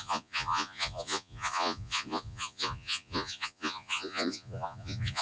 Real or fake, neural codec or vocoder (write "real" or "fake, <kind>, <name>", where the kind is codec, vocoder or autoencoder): fake, vocoder, Vocos